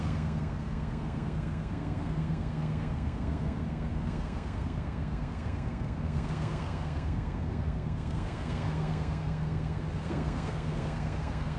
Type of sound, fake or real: fake